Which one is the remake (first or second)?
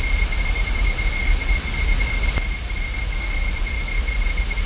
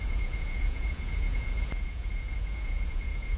second